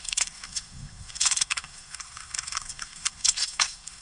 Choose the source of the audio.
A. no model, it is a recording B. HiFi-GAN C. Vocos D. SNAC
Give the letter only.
D